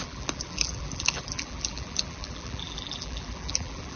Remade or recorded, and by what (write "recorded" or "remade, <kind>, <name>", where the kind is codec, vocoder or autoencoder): remade, vocoder, BigVGAN v2